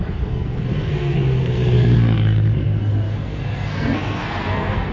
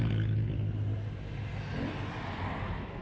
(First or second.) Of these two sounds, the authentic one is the second